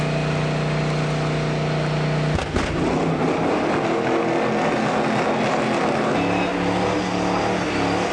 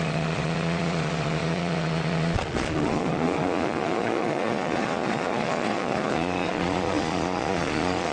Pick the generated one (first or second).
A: second